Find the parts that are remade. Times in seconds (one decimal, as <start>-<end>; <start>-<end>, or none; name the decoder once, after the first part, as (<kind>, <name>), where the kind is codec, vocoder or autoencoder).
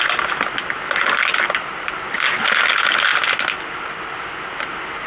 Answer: none